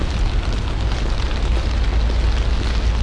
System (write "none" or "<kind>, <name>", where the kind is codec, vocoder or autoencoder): none